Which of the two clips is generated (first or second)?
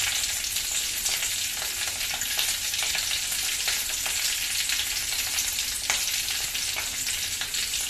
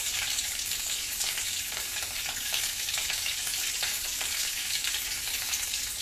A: second